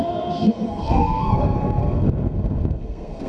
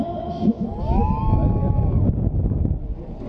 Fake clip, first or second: first